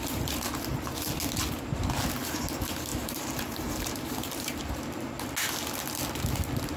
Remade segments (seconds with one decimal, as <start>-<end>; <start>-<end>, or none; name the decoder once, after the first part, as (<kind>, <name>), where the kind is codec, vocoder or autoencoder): 2.9-4.6 (vocoder, BigVGAN v2)